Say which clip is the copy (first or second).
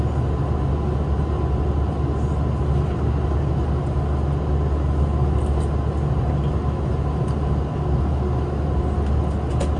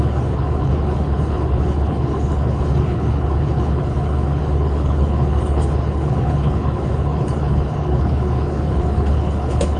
second